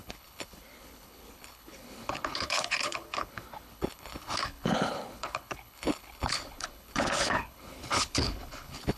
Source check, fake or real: fake